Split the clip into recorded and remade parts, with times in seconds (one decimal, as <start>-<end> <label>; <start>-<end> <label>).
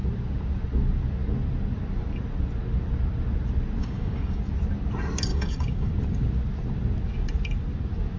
0.0-3.8 recorded; 3.8-4.4 remade; 4.4-5.3 recorded; 5.3-5.9 remade; 5.9-8.2 recorded